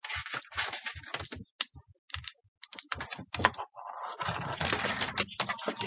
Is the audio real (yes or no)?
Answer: yes